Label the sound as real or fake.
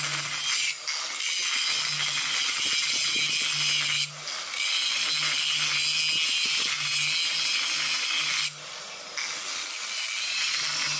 real